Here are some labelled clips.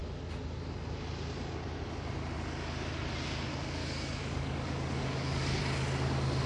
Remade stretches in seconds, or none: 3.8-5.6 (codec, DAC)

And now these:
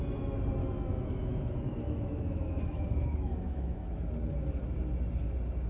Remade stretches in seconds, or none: 0.6-4.0 (autoencoder, DAC-VAE)

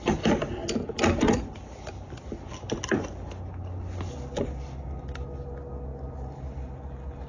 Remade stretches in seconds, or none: none

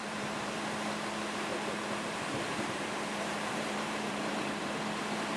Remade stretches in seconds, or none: 0.0-0.6 (vocoder, BigVGAN v2); 1.5-4.7

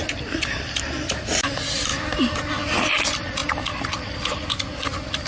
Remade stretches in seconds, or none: none

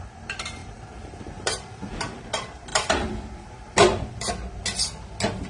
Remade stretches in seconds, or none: 0.6-1.9 (vocoder, BigVGAN v2); 2.7-4.3

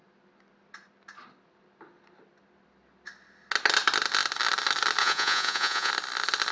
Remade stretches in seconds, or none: 5.0-5.9 (vocoder, Vocos)